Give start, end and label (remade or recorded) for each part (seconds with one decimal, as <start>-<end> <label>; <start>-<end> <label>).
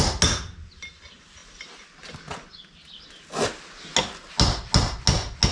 0.0-5.5 recorded